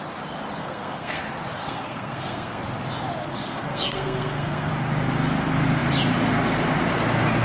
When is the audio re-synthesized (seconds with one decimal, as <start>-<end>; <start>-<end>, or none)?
0.6-1.2; 1.6-2.6; 3.2-4.7